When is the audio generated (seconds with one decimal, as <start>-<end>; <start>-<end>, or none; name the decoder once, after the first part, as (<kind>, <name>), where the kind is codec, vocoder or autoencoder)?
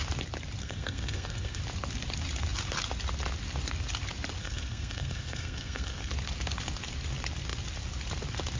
0.6-1.6 (codec, SNAC); 4.4-6.1